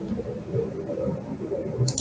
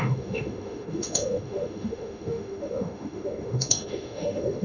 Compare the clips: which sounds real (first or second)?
first